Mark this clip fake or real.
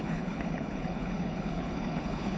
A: fake